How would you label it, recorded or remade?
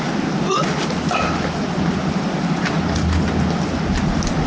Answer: remade